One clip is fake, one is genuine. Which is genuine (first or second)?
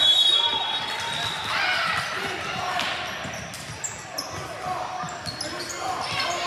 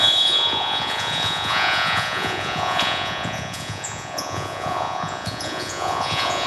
first